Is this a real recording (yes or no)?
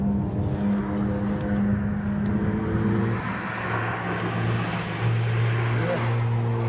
yes